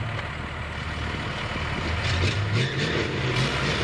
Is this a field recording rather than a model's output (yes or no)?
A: yes